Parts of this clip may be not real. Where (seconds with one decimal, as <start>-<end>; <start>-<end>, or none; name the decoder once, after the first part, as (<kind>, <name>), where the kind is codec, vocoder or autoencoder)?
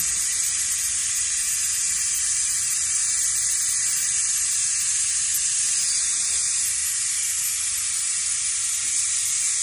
0.0-3.0 (vocoder, BigVGAN v2); 4.5-9.6